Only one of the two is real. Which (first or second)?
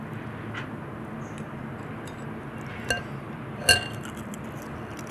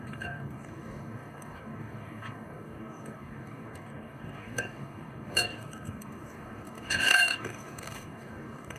first